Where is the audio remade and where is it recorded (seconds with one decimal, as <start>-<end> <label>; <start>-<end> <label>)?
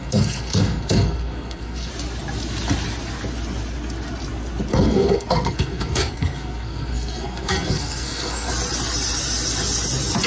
0.0-1.9 remade; 1.9-4.7 recorded; 4.7-8.5 remade; 8.5-10.3 recorded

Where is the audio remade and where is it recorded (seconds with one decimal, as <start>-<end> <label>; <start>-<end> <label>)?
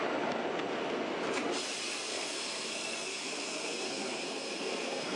0.0-2.1 recorded; 2.1-5.2 remade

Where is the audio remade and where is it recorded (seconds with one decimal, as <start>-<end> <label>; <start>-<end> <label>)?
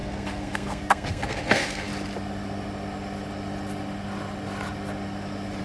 0.0-1.9 remade; 1.9-5.6 recorded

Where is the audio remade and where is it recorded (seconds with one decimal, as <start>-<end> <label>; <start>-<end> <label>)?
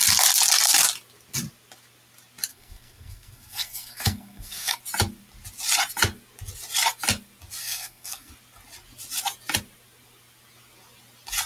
0.0-2.5 recorded; 2.5-4.8 remade; 4.8-7.6 recorded; 7.6-8.3 remade; 8.3-11.5 recorded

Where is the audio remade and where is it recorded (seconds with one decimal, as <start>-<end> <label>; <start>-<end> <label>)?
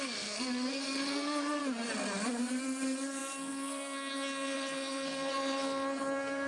0.0-1.6 remade; 1.6-2.6 recorded; 2.6-6.5 remade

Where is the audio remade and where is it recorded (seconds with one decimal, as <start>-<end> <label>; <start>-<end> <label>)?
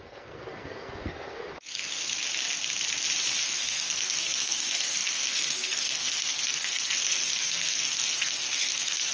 0.0-2.1 remade; 2.1-3.4 recorded; 3.4-9.1 remade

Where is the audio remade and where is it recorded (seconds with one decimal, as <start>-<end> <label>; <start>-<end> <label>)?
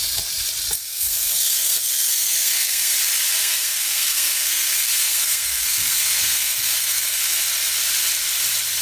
0.0-0.8 recorded; 0.8-2.9 remade; 2.9-3.3 recorded; 3.3-7.4 remade; 7.4-8.8 recorded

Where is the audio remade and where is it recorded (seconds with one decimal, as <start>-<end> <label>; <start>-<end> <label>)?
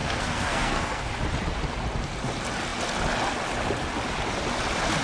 0.0-1.1 remade; 1.1-5.0 recorded